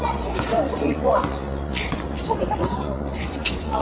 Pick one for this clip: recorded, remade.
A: remade